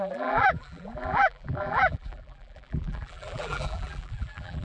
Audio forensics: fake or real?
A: fake